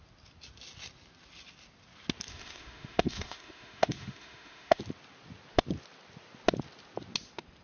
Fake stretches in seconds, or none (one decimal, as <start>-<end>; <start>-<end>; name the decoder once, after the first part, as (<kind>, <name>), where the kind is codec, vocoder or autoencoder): 2.3-4.8 (autoencoder, DAC-VAE)

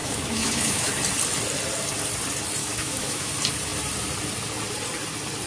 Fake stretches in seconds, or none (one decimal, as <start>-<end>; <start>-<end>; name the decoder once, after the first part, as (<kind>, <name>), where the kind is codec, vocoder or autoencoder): 0.0-0.9 (autoencoder, DAC-VAE); 2.6-3.3

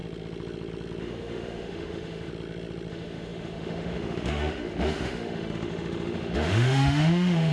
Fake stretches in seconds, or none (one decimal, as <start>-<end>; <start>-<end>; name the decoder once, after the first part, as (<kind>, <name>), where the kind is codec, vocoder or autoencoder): 1.0-2.3 (autoencoder, DAC-VAE); 2.9-7.5

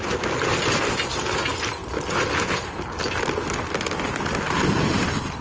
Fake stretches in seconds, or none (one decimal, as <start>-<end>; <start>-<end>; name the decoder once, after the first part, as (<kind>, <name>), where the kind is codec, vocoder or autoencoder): none

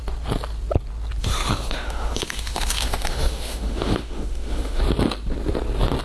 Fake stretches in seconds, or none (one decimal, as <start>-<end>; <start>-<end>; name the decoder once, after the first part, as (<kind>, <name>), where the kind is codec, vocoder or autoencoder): 1.2-4.8 (autoencoder, DAC-VAE)

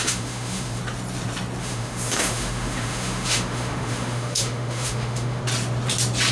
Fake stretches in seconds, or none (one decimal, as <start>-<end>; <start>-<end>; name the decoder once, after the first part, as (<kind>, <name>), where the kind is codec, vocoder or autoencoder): 0.0-0.8 (autoencoder, DAC-VAE); 1.6-5.4